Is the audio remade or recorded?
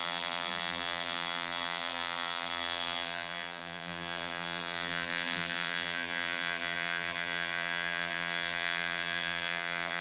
remade